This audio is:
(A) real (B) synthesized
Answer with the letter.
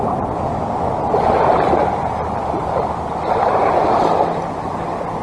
A